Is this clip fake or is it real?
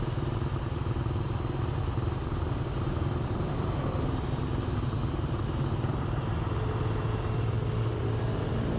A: real